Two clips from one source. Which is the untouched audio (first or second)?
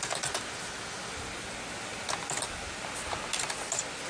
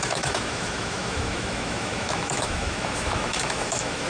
first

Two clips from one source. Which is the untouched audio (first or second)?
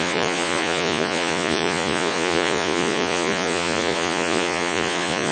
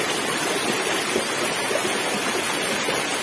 second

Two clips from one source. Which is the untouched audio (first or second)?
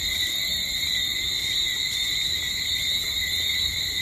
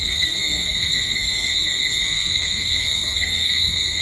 first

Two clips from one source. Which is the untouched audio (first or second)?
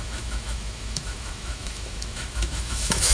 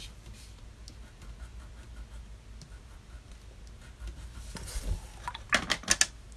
second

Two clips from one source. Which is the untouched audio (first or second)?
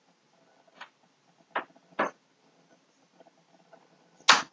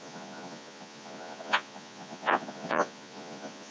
first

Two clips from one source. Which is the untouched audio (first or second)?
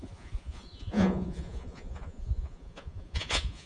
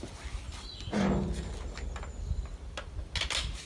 second